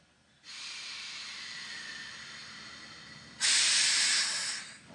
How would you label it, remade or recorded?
recorded